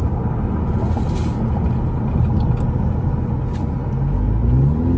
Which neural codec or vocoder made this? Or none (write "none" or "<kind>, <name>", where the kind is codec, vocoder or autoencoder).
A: none